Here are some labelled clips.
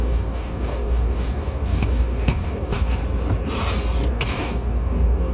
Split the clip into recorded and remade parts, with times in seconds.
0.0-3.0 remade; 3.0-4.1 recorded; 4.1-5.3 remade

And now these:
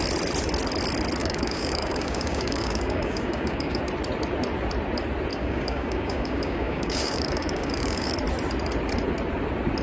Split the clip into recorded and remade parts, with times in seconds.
0.0-1.2 recorded; 1.2-3.8 remade; 3.8-5.3 recorded; 5.3-8.1 remade; 8.1-9.8 recorded

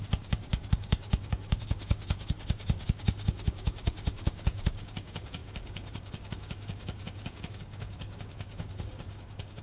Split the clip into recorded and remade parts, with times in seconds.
0.0-9.6 remade

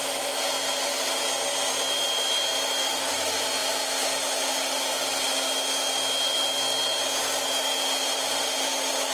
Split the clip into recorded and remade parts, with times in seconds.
0.0-9.1 recorded